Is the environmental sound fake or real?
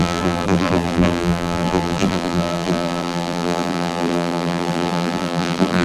fake